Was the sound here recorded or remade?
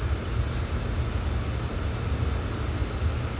recorded